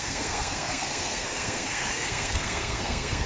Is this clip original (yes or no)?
no